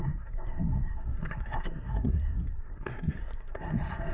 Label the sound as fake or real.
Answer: fake